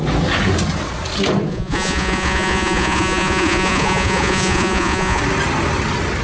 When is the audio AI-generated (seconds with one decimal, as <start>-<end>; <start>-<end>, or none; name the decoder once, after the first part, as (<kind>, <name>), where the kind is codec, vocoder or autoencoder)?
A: 1.5-5.2 (vocoder, Vocos)